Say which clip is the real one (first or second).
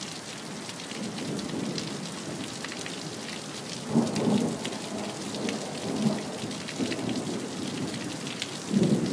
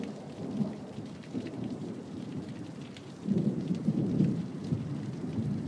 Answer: first